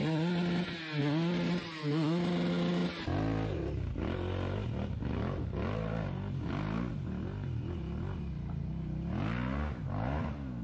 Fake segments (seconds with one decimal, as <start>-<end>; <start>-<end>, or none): none